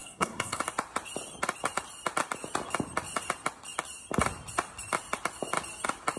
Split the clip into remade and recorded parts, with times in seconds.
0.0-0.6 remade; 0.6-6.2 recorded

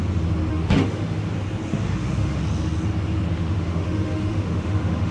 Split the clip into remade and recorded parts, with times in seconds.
0.0-0.5 recorded; 0.5-1.2 remade; 1.2-1.7 recorded; 1.7-2.4 remade; 2.4-3.3 recorded; 3.3-5.1 remade

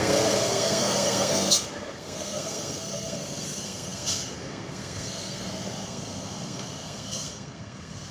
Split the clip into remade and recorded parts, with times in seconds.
0.0-8.1 remade

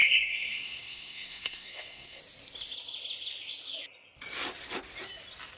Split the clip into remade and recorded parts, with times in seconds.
0.0-2.2 remade; 2.2-5.6 recorded

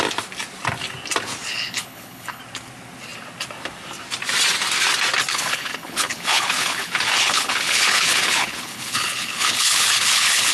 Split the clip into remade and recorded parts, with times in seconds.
0.0-1.5 recorded; 1.5-2.4 remade; 2.4-5.3 recorded; 5.3-10.5 remade

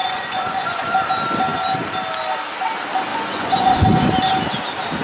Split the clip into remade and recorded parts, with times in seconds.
0.0-0.9 remade; 0.9-3.1 recorded; 3.1-4.1 remade; 4.1-5.0 recorded

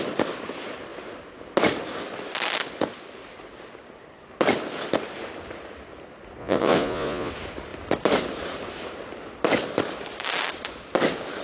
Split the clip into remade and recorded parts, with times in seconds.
0.0-6.4 recorded; 6.4-7.3 remade; 7.3-11.4 recorded

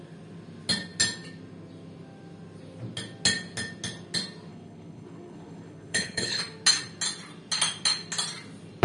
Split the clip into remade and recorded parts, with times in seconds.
0.0-4.5 recorded; 4.5-6.4 remade; 6.4-8.8 recorded